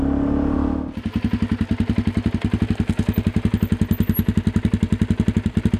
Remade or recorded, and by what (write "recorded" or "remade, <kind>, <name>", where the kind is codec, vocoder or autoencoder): recorded